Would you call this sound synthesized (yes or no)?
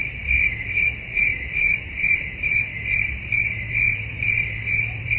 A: yes